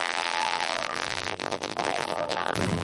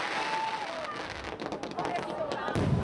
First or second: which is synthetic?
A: first